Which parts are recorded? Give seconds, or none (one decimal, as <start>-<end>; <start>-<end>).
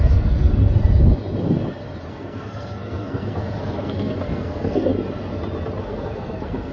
0.5-2.1; 4.9-5.8